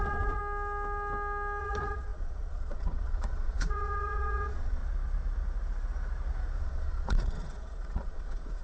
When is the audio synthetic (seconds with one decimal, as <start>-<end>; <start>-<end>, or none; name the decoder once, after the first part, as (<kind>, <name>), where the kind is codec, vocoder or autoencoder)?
0.0-0.4 (vocoder, Vocos); 1.6-4.8; 6.6-8.6